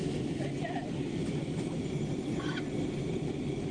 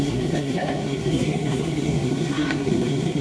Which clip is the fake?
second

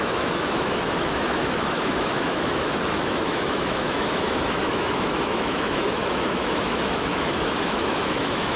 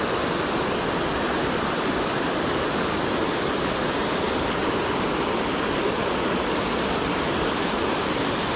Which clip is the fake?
first